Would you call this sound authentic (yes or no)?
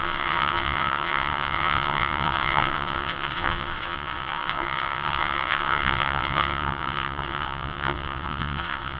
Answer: no